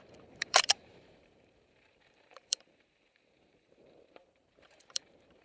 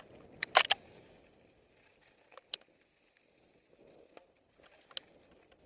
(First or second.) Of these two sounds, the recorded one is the second